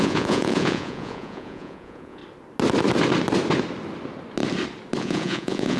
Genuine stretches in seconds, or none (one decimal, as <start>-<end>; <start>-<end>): 2.2-5.0